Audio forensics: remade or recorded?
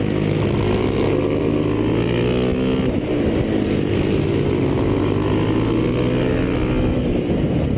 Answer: recorded